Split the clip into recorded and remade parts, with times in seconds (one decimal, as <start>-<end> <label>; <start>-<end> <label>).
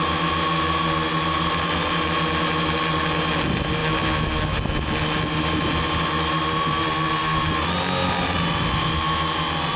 0.0-9.8 recorded